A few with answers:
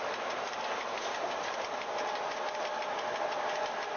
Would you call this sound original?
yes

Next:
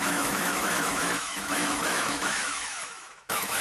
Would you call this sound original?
no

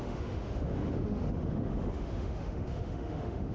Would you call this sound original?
no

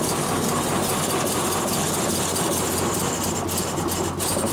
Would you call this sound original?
yes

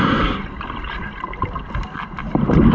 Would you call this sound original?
yes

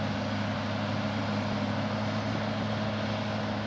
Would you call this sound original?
yes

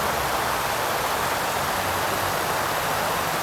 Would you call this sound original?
yes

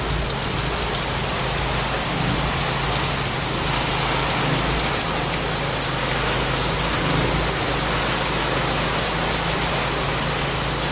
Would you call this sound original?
yes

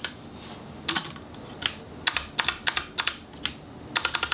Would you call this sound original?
yes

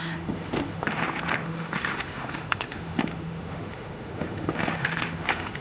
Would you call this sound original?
no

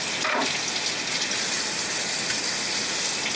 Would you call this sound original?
yes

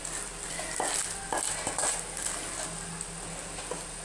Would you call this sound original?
yes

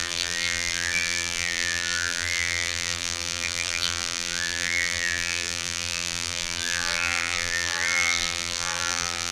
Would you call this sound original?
no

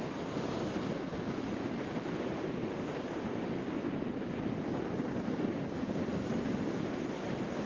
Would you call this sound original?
yes